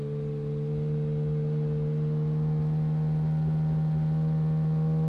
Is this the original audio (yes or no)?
yes